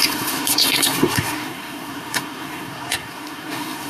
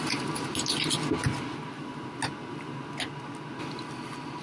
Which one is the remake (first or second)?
first